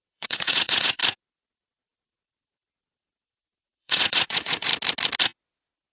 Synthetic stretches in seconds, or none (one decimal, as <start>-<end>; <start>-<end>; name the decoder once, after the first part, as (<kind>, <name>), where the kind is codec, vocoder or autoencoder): 0.0-1.0 (vocoder, WaveNeXt); 3.8-4.7